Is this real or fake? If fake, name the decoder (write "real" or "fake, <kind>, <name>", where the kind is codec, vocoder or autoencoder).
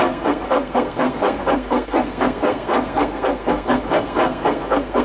fake, codec, SNAC